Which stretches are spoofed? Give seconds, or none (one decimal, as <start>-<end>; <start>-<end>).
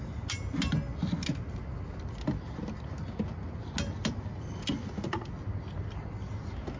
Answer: none